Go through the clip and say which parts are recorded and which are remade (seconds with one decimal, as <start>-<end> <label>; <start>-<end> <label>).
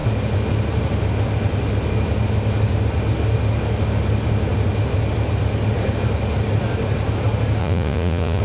0.0-7.6 recorded; 7.6-8.4 remade